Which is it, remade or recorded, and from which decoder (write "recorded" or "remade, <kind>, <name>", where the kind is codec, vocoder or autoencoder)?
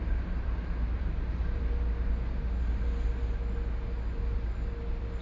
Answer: recorded